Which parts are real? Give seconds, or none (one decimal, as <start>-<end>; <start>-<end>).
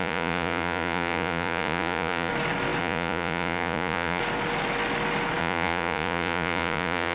2.3-2.8; 4.2-5.4